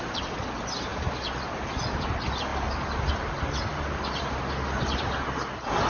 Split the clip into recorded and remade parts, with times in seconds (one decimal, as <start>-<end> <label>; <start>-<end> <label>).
0.0-5.9 recorded